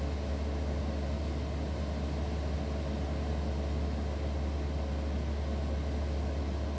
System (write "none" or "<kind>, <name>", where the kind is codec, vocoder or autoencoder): none